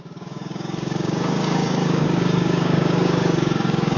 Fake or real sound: fake